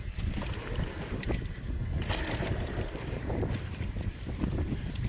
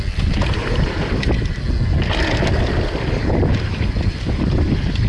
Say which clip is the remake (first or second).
first